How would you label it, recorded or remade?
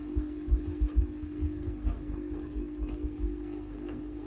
remade